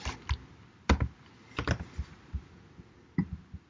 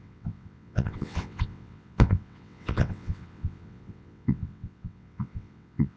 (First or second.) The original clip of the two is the first